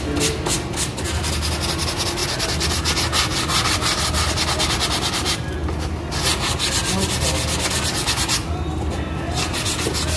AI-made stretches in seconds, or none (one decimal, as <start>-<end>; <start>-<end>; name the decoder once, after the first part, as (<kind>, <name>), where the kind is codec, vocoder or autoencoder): none